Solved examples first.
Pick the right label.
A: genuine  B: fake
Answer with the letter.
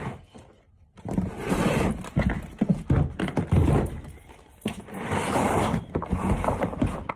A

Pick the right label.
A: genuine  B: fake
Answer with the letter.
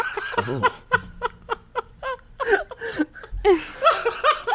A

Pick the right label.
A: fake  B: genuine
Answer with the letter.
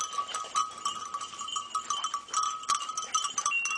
B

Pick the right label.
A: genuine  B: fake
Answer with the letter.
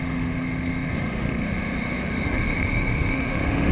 B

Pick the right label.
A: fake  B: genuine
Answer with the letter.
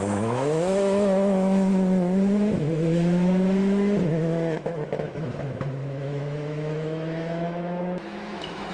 A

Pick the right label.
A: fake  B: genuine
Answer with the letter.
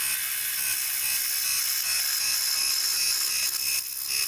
B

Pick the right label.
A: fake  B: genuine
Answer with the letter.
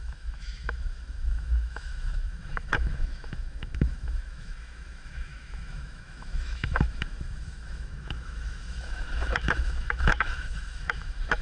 A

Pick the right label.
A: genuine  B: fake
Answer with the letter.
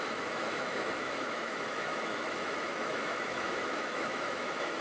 B